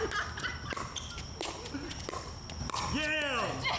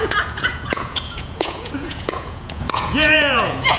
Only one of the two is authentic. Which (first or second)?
first